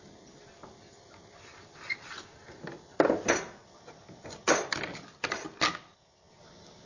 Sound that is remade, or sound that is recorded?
recorded